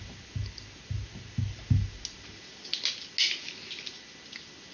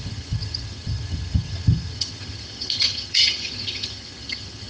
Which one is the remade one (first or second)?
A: second